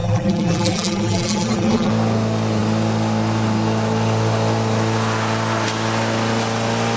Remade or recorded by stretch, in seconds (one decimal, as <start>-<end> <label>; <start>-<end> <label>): 0.0-1.9 remade; 1.9-7.0 recorded

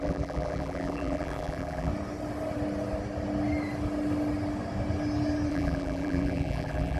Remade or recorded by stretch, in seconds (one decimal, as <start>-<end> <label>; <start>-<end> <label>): 0.0-1.9 remade; 1.9-5.5 recorded; 5.5-7.0 remade

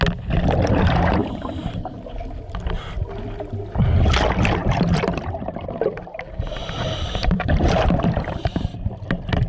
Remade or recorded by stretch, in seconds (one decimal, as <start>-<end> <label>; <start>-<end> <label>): 0.0-1.2 recorded; 1.2-2.2 remade; 2.2-4.6 recorded; 4.6-5.7 remade; 5.7-6.8 recorded; 6.8-8.9 remade; 8.9-9.5 recorded

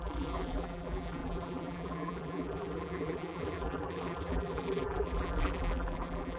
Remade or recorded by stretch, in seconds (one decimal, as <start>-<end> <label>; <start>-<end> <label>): 0.0-6.4 remade

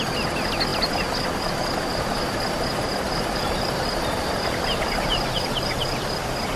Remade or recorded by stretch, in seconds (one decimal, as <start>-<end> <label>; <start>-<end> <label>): 0.0-1.9 recorded; 1.9-5.8 remade; 5.8-6.6 recorded

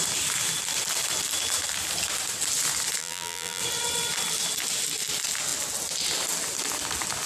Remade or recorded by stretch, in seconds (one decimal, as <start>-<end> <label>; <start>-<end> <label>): 0.0-3.0 recorded; 3.0-3.6 remade; 3.6-7.3 recorded

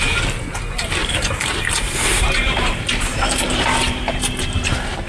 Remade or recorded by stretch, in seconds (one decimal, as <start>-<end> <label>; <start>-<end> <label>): 0.0-1.0 recorded; 1.0-4.1 remade; 4.1-5.1 recorded